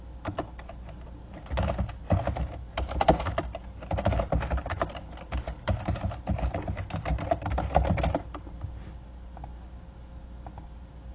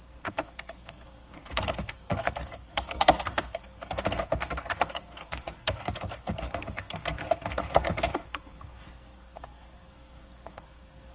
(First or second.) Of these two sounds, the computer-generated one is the second